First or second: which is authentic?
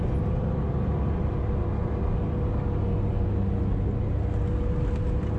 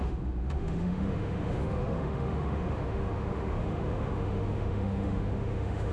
first